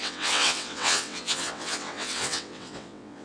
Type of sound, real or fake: fake